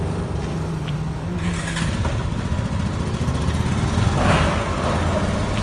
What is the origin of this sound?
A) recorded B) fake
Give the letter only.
A